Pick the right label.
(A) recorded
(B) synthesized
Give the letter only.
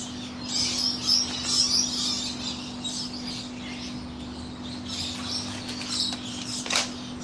A